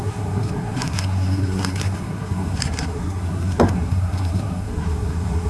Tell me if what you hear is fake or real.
fake